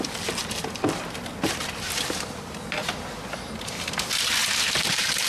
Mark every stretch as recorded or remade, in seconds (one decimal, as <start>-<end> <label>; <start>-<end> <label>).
0.0-4.4 recorded; 4.4-5.3 remade